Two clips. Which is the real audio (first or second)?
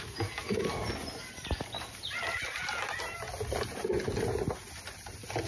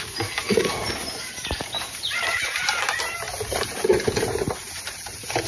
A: first